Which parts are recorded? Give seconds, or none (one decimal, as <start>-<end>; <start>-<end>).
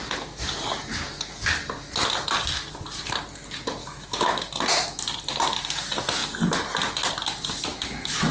0.0-3.8; 4.4-7.7